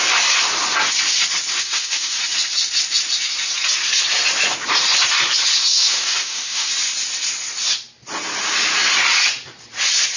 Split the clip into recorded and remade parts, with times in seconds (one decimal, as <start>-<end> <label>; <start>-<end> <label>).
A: 0.0-1.5 recorded; 1.5-2.2 remade; 2.2-5.6 recorded; 5.6-6.7 remade; 6.7-10.2 recorded